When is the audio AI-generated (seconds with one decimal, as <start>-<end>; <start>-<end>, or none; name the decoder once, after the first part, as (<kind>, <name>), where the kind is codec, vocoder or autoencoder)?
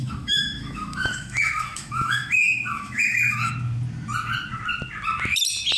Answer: 0.0-3.5 (autoencoder, DAC-VAE)